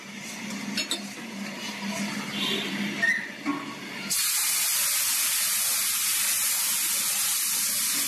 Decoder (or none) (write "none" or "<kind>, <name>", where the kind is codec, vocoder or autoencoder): none